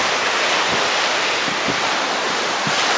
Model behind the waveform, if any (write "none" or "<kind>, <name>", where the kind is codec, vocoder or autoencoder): none